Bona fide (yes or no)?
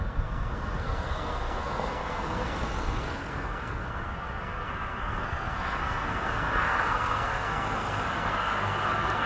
no